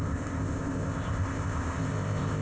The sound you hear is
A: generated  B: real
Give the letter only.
A